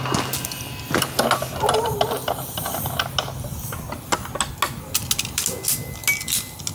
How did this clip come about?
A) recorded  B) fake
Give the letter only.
A